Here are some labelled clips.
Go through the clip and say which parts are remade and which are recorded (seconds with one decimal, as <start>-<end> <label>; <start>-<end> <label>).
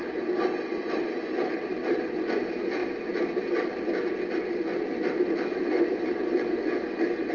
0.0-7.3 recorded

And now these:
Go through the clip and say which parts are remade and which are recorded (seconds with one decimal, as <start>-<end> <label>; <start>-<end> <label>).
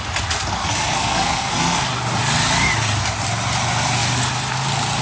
0.0-0.6 recorded; 0.6-1.8 remade; 1.8-5.0 recorded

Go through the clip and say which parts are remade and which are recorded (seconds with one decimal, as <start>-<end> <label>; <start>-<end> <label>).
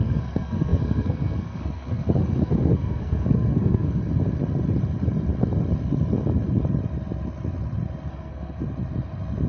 0.0-4.0 remade; 4.0-8.1 recorded; 8.1-8.6 remade; 8.6-9.5 recorded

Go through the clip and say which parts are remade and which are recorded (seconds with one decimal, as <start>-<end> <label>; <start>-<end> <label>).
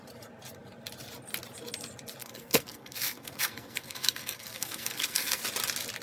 0.0-2.2 recorded; 2.2-5.4 remade; 5.4-6.0 recorded